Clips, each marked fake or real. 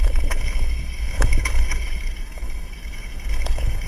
fake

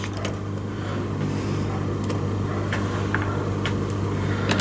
real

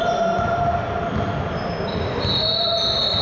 real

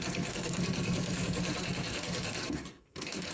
fake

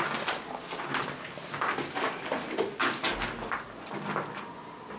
real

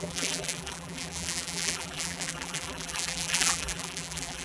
fake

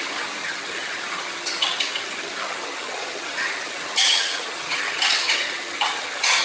fake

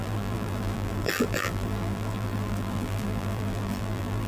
fake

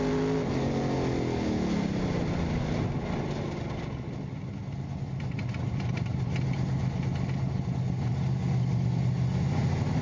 real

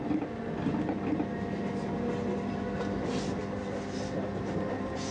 real